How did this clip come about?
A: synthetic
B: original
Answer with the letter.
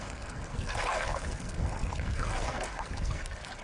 A